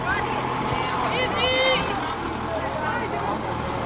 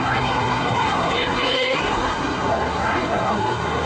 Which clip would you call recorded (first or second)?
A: first